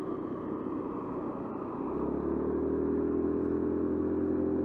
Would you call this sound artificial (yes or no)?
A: no